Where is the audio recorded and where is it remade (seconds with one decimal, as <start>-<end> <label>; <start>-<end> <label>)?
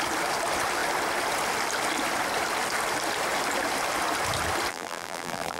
0.0-4.7 recorded; 4.7-5.6 remade